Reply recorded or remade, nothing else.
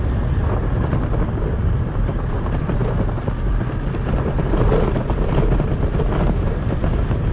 recorded